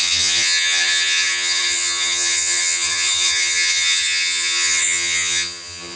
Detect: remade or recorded remade